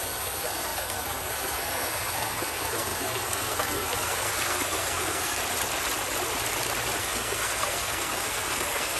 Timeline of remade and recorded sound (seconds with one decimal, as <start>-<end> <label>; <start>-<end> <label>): 0.0-5.4 remade; 5.4-7.0 recorded; 7.0-9.0 remade